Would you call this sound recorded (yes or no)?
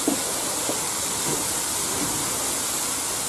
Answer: yes